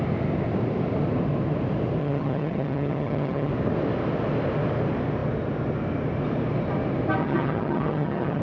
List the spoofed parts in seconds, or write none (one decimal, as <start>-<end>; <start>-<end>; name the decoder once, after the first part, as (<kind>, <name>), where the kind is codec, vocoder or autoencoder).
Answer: 2.0-3.5 (vocoder, HiFi-GAN); 7.2-8.4